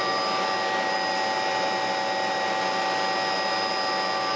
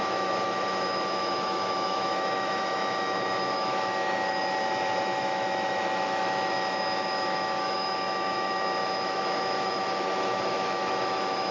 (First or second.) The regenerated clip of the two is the second